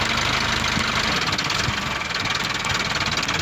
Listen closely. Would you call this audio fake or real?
real